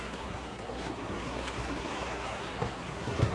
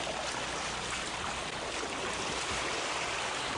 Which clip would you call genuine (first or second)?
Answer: second